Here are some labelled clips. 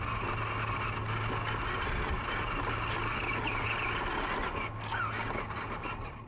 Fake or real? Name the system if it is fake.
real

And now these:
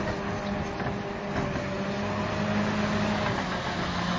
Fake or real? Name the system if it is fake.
real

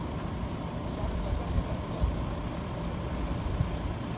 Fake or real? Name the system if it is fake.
real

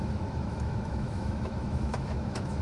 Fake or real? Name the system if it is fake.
fake, autoencoder, DAC-VAE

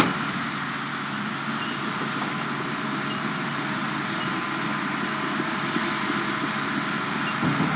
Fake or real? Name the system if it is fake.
real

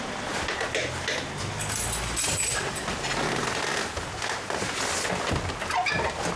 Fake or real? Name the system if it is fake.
real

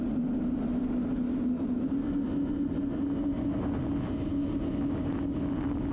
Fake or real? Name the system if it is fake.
real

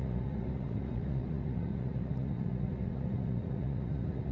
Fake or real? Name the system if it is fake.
fake, vocoder, Vocos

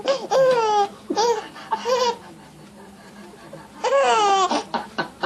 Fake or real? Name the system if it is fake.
real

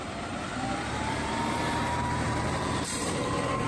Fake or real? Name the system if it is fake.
fake, vocoder, BigVGAN v2